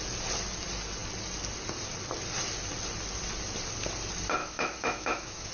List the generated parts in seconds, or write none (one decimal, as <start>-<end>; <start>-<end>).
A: 4.4-5.5